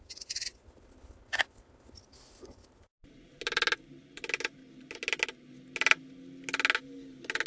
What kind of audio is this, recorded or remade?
recorded